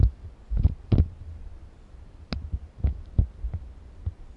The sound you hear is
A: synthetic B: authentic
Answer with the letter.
B